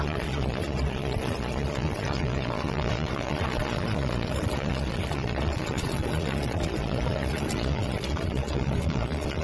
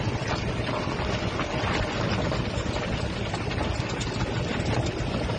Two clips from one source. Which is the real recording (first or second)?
second